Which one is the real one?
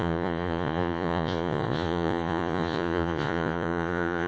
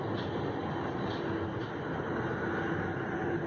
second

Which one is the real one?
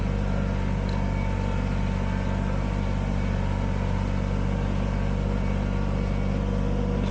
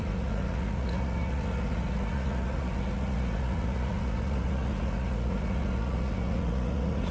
first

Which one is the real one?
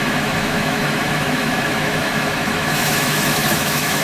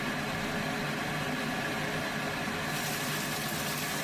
second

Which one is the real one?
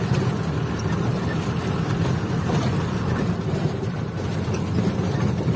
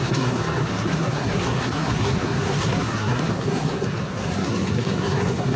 first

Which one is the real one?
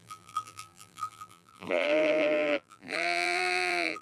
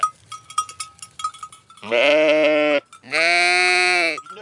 second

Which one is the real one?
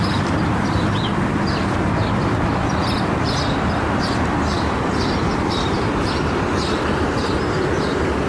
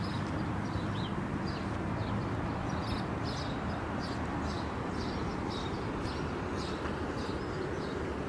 second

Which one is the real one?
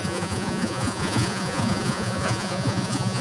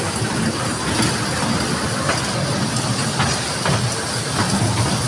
second